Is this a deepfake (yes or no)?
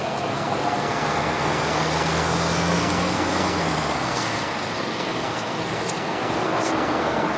yes